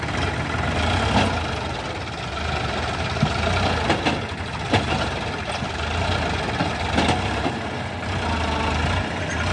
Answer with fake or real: real